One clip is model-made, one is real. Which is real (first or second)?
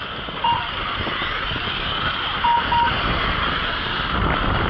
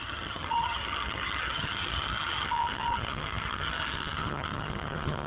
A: first